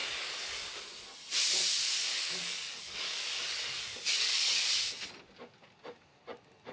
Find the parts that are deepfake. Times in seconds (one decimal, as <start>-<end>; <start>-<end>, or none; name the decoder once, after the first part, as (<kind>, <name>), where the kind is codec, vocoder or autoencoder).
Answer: 0.0-0.8 (codec, DAC); 2.1-4.7